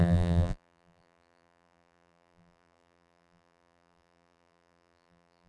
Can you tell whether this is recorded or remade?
remade